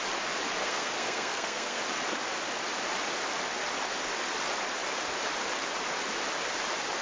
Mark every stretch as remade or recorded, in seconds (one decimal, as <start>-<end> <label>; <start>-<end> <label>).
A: 0.0-0.6 recorded; 0.6-1.8 remade; 1.8-7.0 recorded